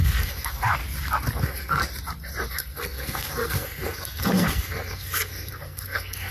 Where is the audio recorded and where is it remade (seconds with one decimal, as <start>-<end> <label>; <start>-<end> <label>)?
0.0-0.8 remade; 0.8-1.4 recorded; 1.4-1.8 remade; 1.8-2.5 recorded; 2.5-6.3 remade